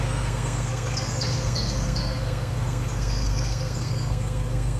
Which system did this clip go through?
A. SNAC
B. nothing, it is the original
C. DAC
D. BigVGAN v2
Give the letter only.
A